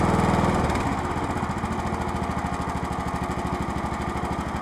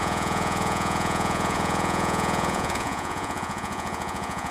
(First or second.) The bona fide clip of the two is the first